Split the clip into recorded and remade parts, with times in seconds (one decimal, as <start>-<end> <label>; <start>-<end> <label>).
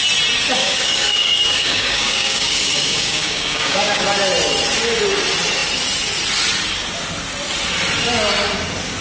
0.0-0.6 recorded; 0.6-4.0 remade; 4.0-9.0 recorded